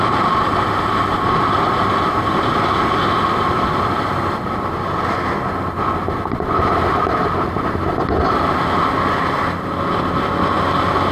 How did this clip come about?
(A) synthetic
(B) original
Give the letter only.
B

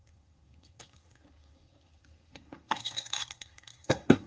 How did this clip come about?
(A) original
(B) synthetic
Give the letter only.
B